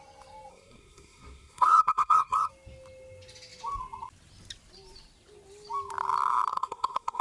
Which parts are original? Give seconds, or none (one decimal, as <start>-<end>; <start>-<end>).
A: 0.0-0.5; 2.5-6.5